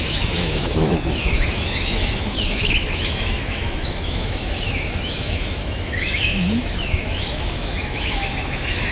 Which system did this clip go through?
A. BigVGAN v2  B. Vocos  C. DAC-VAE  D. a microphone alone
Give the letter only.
C